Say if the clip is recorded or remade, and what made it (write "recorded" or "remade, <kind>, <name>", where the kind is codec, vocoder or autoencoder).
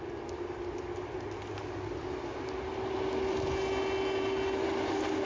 recorded